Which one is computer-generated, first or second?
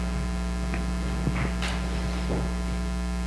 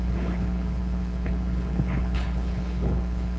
second